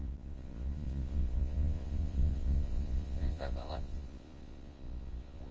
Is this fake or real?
fake